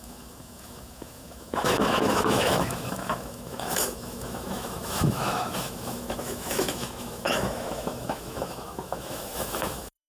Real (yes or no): no